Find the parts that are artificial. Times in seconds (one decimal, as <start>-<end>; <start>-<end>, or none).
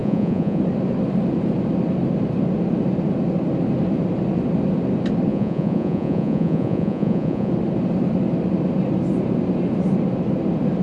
0.0-0.6; 5.3-7.5